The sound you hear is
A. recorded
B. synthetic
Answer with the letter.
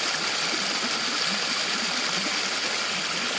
A